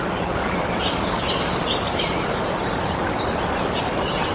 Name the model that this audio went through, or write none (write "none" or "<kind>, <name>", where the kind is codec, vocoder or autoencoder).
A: none